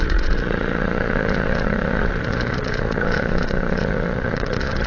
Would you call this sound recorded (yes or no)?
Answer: no